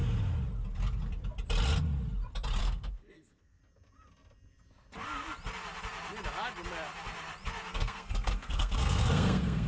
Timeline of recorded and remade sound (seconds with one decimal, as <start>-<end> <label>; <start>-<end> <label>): 0.0-2.6 recorded; 2.6-3.6 remade; 3.6-7.7 recorded; 7.7-9.7 remade